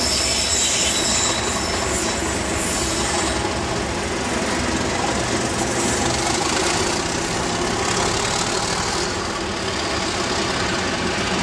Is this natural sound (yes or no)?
yes